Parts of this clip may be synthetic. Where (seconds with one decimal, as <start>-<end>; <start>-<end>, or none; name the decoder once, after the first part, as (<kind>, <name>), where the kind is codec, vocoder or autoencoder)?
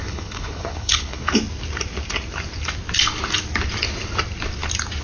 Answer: 0.0-1.3 (codec, HILCodec)